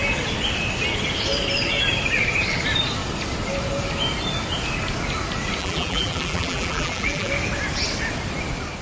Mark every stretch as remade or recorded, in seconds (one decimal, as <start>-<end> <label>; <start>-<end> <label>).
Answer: 0.0-5.6 recorded; 5.6-7.3 remade; 7.3-8.8 recorded